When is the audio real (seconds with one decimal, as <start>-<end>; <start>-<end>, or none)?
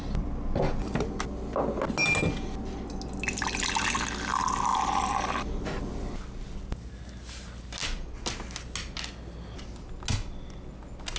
0.0-11.2